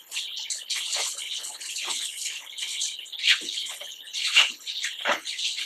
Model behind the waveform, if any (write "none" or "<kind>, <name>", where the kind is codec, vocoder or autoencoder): codec, HILCodec